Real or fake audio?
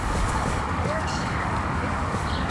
fake